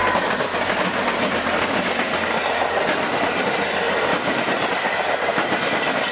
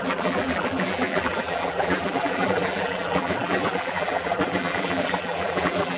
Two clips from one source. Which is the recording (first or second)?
first